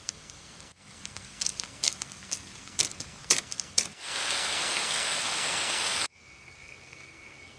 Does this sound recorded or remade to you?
remade